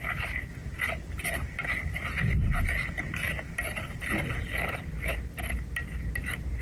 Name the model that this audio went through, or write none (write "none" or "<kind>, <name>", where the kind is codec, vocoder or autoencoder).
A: none